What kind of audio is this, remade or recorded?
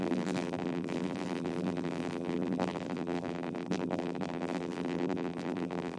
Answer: remade